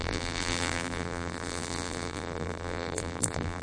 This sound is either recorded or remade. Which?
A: remade